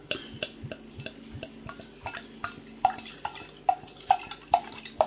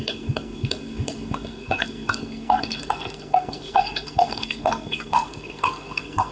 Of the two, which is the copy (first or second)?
second